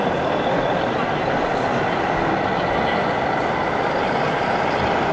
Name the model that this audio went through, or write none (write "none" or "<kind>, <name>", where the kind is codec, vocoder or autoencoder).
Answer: none